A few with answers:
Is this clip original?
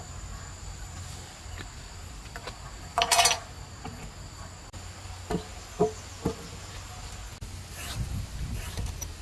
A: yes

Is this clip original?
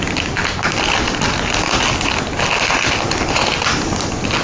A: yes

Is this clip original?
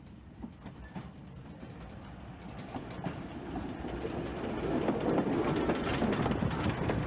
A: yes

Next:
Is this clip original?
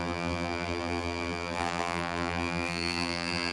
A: no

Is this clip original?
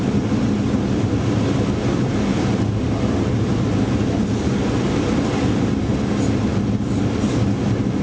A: yes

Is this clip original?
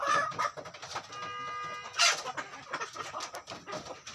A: yes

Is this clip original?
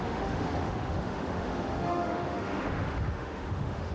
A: no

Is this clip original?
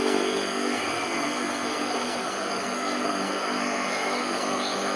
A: no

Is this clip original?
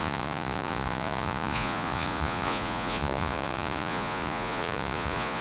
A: no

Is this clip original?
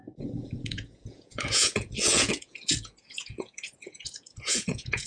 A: no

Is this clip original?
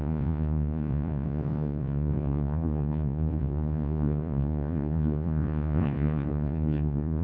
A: no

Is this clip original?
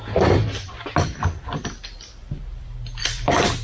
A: no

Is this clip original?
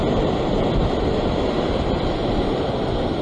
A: yes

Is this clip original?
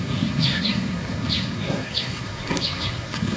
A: no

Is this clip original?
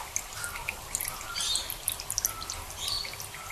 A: yes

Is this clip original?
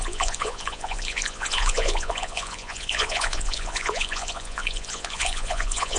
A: no